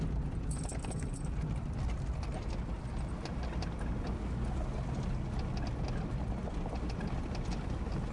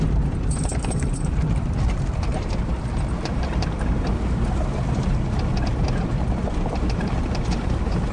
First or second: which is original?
first